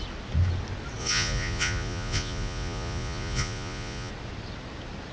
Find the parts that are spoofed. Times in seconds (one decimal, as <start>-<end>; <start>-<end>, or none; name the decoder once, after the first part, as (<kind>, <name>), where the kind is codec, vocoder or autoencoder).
1.0-4.1 (vocoder, Vocos)